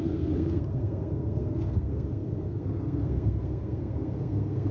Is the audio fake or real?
fake